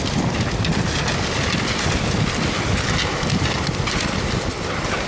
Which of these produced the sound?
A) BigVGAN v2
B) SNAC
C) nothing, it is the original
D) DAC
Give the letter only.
C